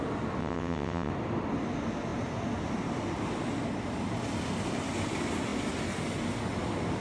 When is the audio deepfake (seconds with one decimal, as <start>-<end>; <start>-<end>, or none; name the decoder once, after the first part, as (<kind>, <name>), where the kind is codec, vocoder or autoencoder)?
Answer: 0.4-1.1 (vocoder, WaveNeXt)